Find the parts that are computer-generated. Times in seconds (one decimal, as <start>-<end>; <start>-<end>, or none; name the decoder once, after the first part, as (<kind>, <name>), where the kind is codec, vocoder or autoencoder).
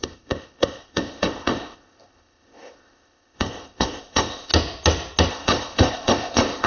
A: 0.0-4.5 (codec, ZipCodec); 5.3-6.7